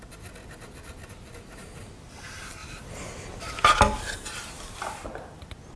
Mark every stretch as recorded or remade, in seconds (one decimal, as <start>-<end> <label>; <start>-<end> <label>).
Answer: 0.0-5.8 recorded